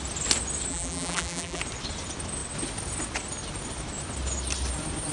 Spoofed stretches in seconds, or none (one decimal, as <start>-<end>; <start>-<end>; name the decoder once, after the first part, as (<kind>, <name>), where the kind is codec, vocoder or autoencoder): 0.7-1.6 (vocoder, BigVGAN v2)